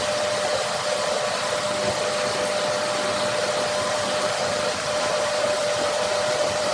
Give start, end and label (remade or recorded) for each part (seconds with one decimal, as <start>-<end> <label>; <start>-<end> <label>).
0.0-3.9 recorded; 3.9-6.7 remade